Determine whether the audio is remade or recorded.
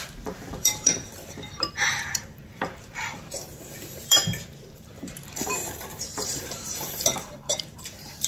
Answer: remade